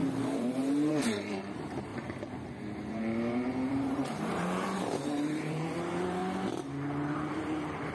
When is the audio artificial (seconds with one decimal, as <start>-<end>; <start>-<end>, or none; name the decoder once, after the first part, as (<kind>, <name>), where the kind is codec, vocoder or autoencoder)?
0.0-1.9 (vocoder, BigVGAN v2); 3.7-6.2; 7.1-7.9